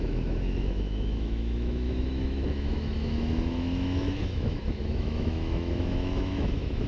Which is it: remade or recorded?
remade